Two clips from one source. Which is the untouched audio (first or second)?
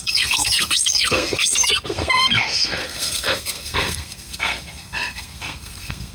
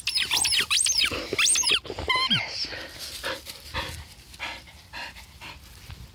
second